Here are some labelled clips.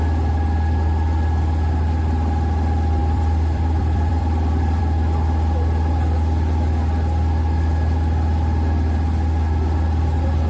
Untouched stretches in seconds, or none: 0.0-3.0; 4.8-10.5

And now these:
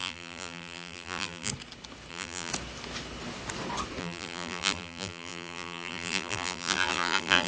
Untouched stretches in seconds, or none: 1.5-2.1; 2.5-4.0

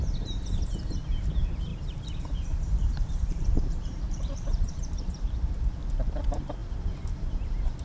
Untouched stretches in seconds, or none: 0.0-1.7; 5.9-7.8

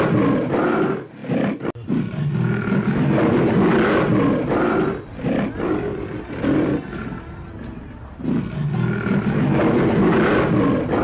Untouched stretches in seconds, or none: 0.0-1.2; 1.9-11.0

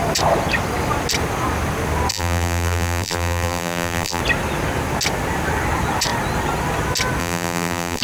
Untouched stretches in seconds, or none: 0.0-2.1; 4.2-7.2